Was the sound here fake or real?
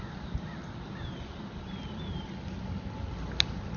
real